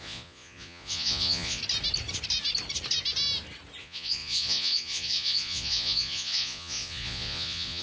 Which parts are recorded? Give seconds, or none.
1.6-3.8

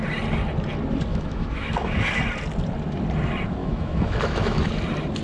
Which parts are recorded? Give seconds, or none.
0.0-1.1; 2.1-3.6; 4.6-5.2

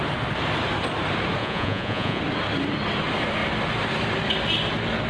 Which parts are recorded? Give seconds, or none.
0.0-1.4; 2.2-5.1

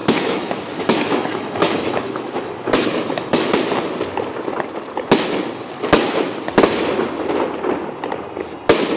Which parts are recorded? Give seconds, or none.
3.6-9.0